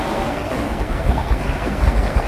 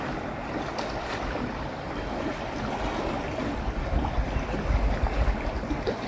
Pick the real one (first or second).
second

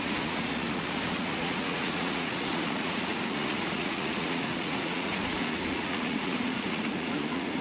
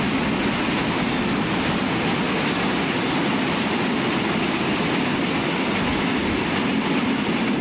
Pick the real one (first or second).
second